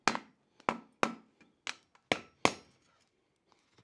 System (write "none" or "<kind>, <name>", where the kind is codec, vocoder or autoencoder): none